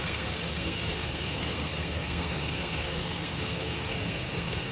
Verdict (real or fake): fake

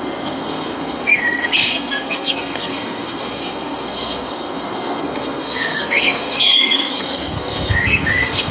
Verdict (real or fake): fake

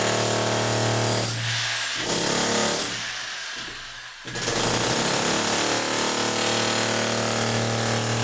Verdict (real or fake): real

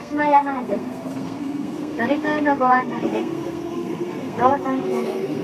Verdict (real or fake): fake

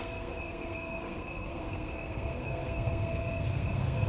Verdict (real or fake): fake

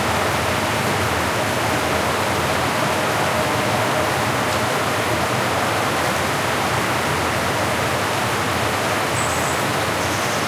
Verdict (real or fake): real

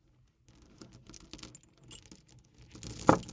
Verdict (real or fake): real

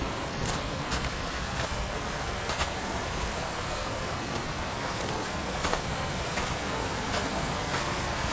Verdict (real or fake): fake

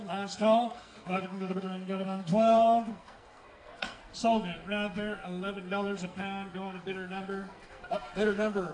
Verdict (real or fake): fake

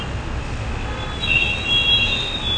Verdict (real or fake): real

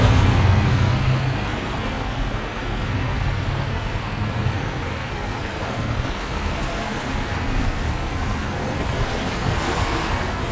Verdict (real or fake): fake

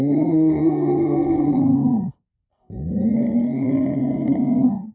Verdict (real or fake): fake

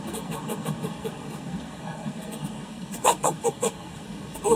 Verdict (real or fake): fake